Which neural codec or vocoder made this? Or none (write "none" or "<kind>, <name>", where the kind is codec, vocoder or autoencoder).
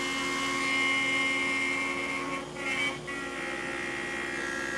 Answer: none